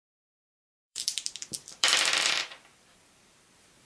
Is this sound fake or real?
fake